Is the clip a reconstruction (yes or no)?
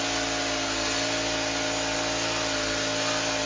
no